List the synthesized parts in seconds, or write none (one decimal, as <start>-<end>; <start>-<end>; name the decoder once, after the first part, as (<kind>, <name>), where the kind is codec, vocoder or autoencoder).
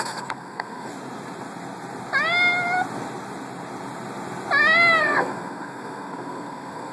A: 0.0-0.9 (codec, SNAC); 5.0-6.9